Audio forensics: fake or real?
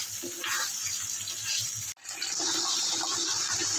real